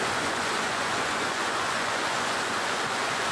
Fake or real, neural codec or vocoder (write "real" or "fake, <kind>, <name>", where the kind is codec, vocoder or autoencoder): fake, vocoder, Vocos